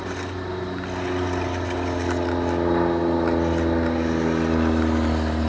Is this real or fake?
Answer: real